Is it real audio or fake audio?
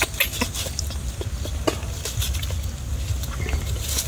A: real